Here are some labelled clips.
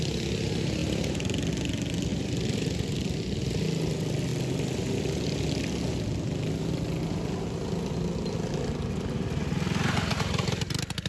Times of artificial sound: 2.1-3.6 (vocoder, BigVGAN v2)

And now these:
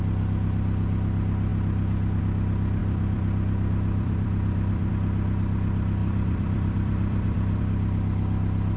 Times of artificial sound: 2.8-4.9 (vocoder, BigVGAN v2); 6.0-7.6